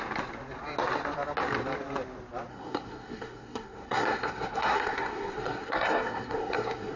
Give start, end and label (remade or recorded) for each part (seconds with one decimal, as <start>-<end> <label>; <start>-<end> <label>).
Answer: 0.0-2.5 recorded; 2.5-7.0 remade